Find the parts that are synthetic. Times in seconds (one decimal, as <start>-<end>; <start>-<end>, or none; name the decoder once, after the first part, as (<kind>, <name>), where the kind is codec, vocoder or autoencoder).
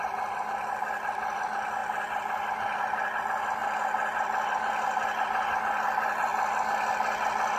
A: none